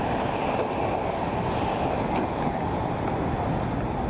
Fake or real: real